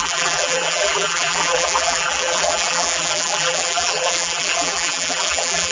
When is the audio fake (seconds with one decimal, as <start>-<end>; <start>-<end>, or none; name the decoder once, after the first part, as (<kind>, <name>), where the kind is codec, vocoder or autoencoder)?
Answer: 0.0-5.7 (vocoder, BigVGAN v2)